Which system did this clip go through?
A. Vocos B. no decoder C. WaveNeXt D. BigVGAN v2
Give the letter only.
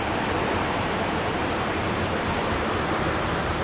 D